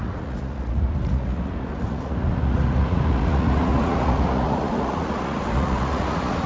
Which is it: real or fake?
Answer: fake